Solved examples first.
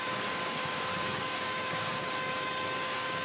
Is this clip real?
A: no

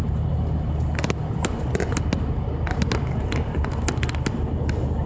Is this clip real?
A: yes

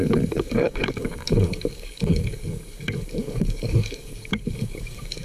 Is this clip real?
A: no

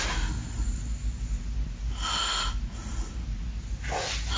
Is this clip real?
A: yes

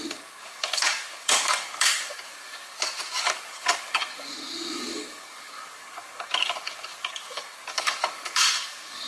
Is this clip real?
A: no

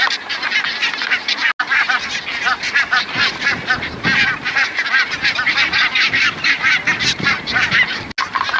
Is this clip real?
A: yes